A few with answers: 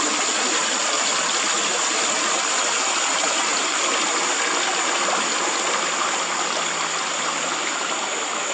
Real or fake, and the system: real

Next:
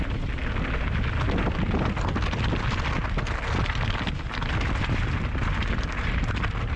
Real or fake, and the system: real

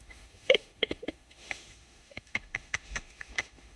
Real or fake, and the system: fake, autoencoder, DAC-VAE